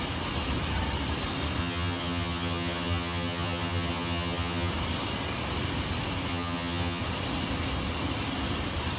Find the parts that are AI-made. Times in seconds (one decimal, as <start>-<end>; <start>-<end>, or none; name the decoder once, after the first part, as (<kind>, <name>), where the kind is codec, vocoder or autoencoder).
1.6-4.7 (vocoder, HiFi-GAN); 6.3-7.0

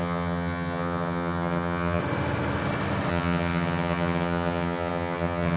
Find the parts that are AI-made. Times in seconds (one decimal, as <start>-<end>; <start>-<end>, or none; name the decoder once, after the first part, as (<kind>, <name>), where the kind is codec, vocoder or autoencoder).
0.0-2.0 (vocoder, HiFi-GAN); 3.1-5.6